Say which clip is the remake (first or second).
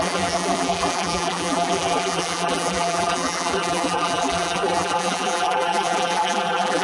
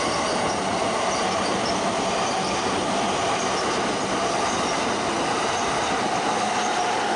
first